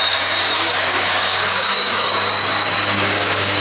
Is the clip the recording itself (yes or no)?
no